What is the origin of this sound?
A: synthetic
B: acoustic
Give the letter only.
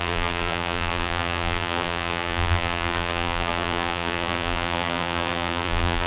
A